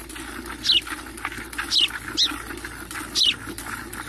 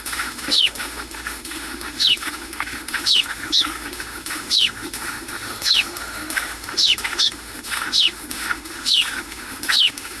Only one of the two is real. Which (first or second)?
first